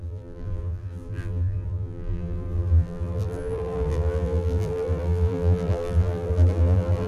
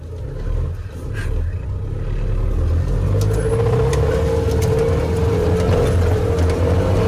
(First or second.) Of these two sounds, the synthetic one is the first